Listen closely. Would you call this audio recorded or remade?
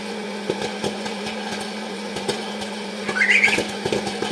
remade